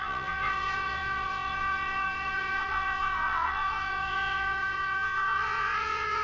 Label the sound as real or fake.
fake